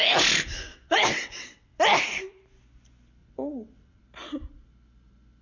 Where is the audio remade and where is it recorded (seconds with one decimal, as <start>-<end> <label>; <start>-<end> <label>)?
0.0-0.7 recorded; 0.7-1.8 remade; 1.8-3.2 recorded; 3.2-4.0 remade; 4.0-5.4 recorded